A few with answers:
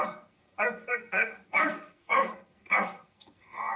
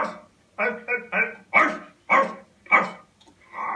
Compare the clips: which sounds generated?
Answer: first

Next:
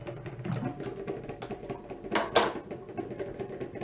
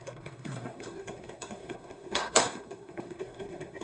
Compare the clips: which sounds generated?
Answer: second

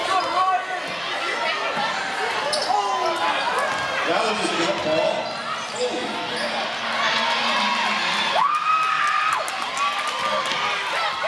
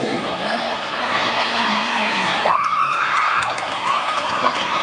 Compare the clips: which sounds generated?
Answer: second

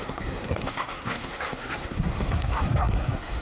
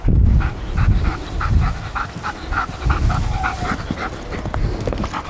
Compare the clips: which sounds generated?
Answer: first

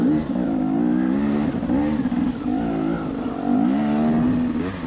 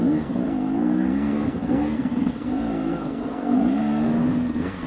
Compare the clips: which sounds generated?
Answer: second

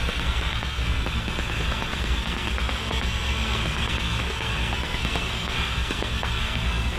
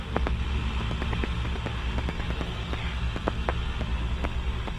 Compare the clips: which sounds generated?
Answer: first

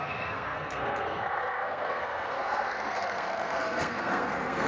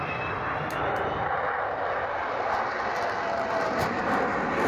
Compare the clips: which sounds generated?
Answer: first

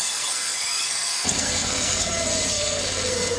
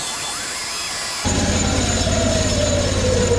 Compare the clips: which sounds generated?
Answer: first